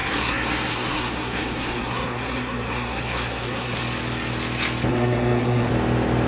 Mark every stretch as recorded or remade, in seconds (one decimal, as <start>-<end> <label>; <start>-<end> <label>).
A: 0.0-3.8 remade; 3.8-4.9 recorded; 4.9-5.7 remade; 5.7-6.3 recorded